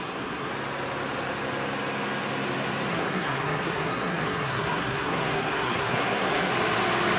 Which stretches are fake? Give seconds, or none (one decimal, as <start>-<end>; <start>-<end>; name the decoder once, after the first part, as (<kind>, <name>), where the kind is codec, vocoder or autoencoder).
0.0-0.5 (codec, SNAC); 2.9-6.5